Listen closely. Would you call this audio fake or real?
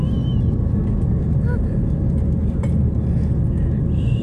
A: real